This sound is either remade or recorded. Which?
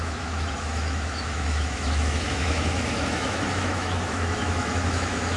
remade